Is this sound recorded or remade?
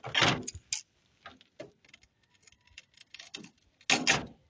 recorded